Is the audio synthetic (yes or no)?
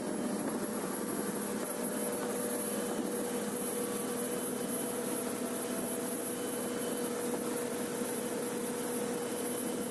no